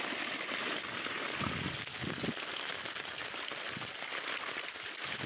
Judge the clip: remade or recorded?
recorded